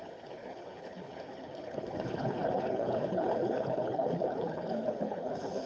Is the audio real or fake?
fake